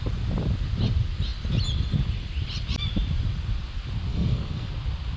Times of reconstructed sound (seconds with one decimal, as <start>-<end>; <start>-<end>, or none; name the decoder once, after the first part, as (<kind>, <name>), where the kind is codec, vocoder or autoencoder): 4.1-4.7 (codec, SNAC)